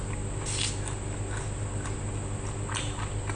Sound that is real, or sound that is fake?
real